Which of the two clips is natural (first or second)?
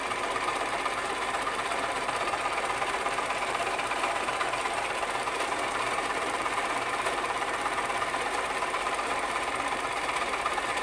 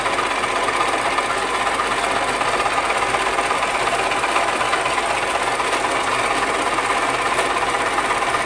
second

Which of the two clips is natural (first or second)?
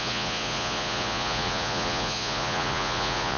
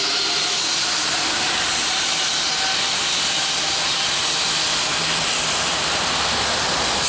second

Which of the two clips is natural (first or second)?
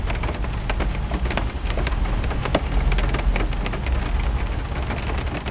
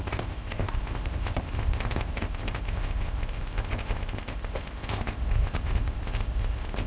first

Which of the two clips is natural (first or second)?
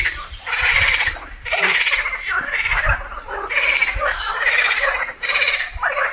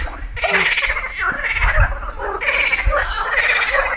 second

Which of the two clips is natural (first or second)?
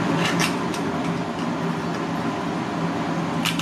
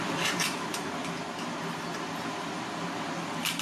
first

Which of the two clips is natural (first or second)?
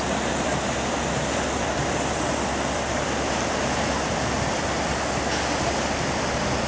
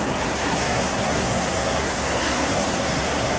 first